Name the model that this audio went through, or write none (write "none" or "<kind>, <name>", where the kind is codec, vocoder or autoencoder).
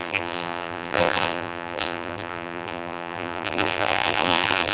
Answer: vocoder, BigVGAN v2